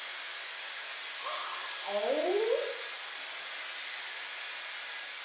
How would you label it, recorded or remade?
recorded